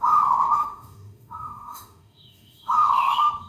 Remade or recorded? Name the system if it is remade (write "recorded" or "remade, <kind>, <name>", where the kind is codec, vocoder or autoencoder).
remade, autoencoder, DAC-VAE